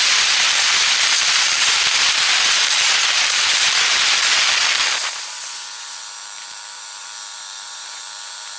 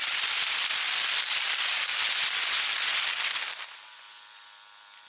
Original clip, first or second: second